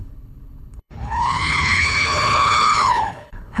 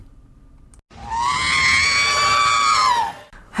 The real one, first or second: second